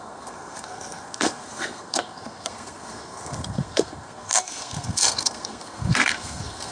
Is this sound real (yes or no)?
no